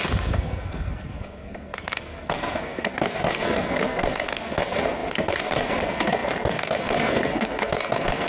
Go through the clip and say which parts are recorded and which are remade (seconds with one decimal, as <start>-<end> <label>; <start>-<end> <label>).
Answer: 0.0-8.3 remade